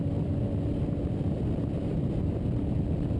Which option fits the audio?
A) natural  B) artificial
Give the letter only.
A